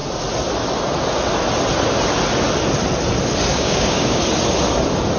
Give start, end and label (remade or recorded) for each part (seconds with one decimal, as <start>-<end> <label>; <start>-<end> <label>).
0.0-3.5 recorded; 3.5-4.2 remade; 4.2-5.2 recorded

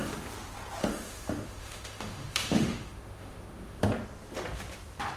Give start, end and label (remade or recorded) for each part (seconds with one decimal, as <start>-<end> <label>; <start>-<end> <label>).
0.0-0.8 recorded; 0.8-3.9 remade; 3.9-5.2 recorded

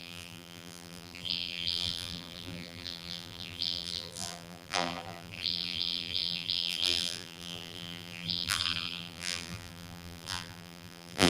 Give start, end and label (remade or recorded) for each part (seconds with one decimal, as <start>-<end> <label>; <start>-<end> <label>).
0.0-11.3 remade

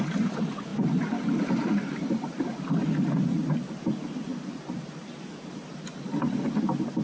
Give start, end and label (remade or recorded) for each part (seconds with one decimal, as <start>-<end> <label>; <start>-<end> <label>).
0.0-7.0 recorded

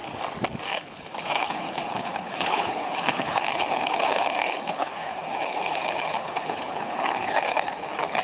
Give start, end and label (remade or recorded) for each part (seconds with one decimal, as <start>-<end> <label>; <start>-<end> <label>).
0.0-0.6 recorded; 0.6-8.2 remade

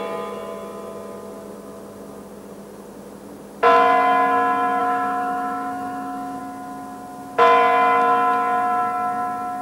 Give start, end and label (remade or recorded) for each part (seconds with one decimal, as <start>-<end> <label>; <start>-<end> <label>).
0.0-4.8 recorded; 4.8-6.4 remade; 6.4-9.6 recorded

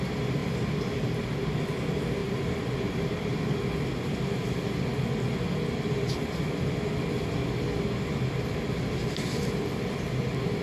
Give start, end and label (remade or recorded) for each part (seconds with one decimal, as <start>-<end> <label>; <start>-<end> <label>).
0.0-2.2 recorded; 2.2-3.4 remade; 3.4-10.6 recorded